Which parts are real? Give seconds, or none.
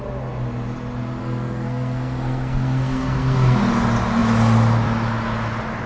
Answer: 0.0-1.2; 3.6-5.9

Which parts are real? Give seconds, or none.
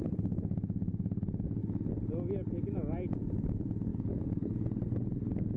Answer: 0.0-3.9; 4.5-5.6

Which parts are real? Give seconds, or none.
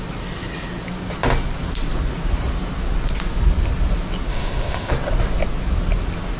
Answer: 0.0-4.3; 4.9-6.4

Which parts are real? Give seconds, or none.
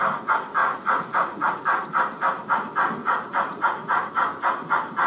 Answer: 0.0-0.6; 1.6-3.0; 4.1-5.1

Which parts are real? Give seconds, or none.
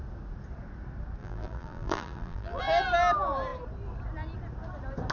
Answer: 0.0-1.2; 2.6-5.1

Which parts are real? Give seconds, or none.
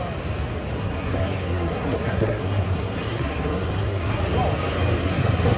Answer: 0.0-0.8; 4.2-5.0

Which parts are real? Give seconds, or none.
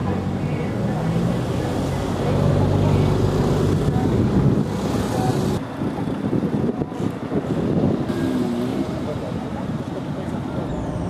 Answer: 0.0-8.7; 9.8-11.1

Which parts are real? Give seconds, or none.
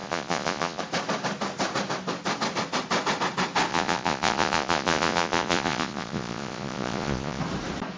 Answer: 0.8-3.7; 7.4-8.0